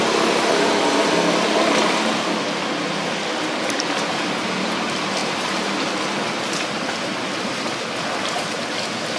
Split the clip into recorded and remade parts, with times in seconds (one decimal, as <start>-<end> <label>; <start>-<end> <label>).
0.0-5.2 recorded; 5.2-5.8 remade; 5.8-9.2 recorded